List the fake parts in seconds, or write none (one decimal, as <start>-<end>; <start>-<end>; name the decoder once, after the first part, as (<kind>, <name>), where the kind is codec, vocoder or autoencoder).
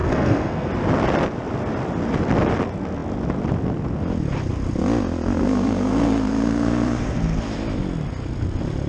0.0-0.7 (codec, SNAC); 5.4-7.4